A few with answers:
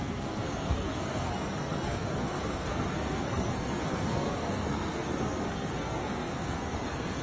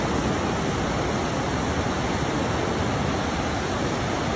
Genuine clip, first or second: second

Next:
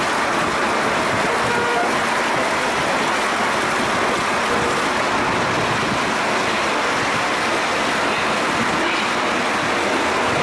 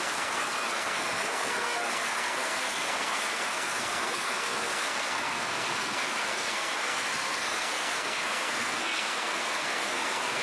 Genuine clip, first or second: first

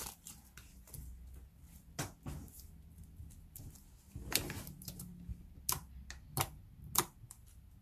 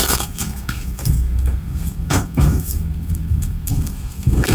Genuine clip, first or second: first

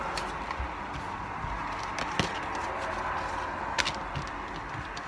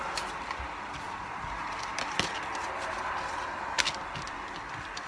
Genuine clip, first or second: first